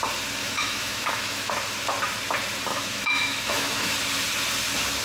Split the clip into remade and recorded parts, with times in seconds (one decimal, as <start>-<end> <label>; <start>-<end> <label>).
0.0-0.4 recorded; 0.4-1.5 remade; 1.5-2.7 recorded; 2.7-3.9 remade; 3.9-5.0 recorded